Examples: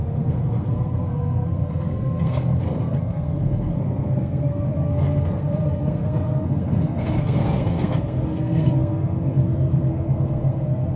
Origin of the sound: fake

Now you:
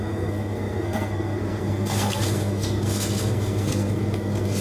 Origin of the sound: fake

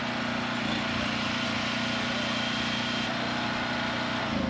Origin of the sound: real